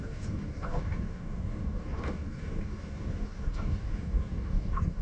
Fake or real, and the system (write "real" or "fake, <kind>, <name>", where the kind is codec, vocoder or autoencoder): fake, codec, DAC